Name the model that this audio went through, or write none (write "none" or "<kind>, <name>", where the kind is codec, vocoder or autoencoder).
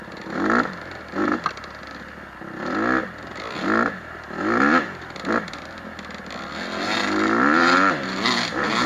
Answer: none